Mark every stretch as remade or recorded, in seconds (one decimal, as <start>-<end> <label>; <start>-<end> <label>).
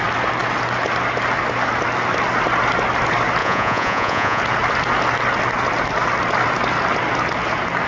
0.0-3.4 recorded; 3.4-4.4 remade; 4.4-7.9 recorded